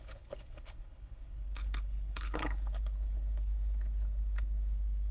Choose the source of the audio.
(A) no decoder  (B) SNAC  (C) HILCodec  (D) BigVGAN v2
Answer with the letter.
C